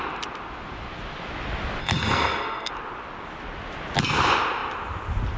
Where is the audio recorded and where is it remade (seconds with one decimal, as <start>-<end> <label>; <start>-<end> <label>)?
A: 0.0-1.8 recorded; 1.8-2.7 remade; 2.7-5.4 recorded